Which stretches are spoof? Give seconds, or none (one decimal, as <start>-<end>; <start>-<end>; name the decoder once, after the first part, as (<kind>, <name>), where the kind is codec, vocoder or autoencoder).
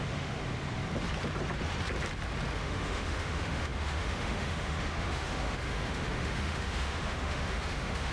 0.0-0.4 (autoencoder, DAC-VAE); 2.6-8.1